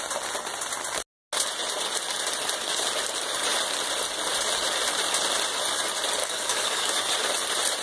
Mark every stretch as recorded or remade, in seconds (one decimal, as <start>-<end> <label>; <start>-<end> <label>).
0.0-6.2 recorded; 6.2-6.9 remade; 6.9-7.8 recorded